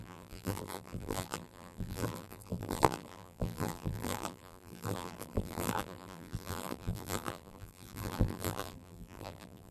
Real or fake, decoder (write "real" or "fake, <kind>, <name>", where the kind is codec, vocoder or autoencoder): fake, vocoder, BigVGAN v2